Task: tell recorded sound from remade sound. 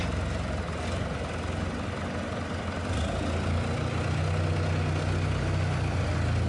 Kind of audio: recorded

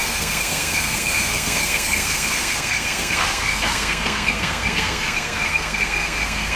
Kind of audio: remade